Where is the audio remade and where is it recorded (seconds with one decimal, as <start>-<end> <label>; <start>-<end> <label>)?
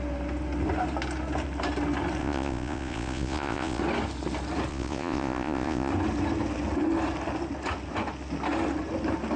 0.0-2.2 recorded; 2.2-3.8 remade; 3.8-4.7 recorded; 4.7-5.9 remade; 5.9-9.4 recorded